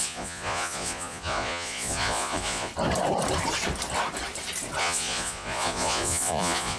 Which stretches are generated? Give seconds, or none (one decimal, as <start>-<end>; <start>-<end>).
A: 0.0-2.7; 4.8-6.8